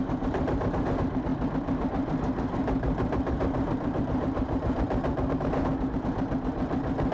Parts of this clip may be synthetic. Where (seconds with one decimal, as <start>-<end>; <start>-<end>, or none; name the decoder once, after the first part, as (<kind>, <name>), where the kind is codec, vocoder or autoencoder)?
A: 0.0-5.7 (vocoder, BigVGAN v2)